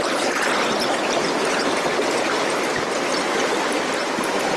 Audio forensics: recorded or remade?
recorded